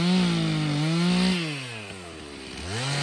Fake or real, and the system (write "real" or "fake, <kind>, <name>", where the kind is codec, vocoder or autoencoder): real